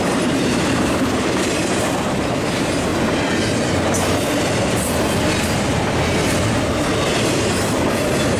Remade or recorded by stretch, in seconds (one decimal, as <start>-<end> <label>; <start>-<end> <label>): 0.0-2.9 remade; 2.9-7.9 recorded; 7.9-8.4 remade